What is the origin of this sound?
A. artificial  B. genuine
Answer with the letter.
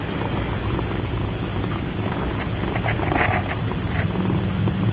B